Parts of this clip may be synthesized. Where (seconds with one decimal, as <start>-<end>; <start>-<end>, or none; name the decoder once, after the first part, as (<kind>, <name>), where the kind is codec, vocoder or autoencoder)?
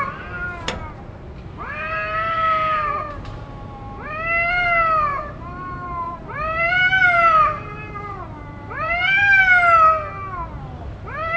5.1-9.4 (vocoder, BigVGAN v2)